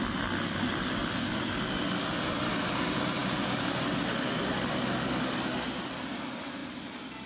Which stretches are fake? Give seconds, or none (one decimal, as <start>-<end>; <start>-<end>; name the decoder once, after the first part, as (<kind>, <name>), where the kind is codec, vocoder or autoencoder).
none